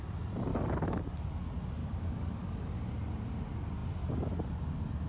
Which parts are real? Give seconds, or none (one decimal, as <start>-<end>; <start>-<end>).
0.0-0.5; 1.0-1.8; 2.7-5.1